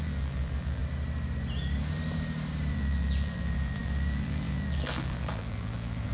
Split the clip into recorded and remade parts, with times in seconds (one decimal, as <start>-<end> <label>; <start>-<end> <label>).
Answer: 0.0-0.8 remade; 0.8-2.7 recorded; 2.7-6.1 remade